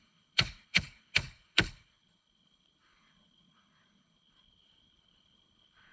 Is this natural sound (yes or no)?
no